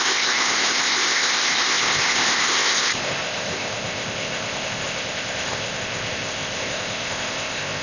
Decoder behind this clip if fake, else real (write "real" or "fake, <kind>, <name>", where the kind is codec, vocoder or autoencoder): fake, codec, ZipCodec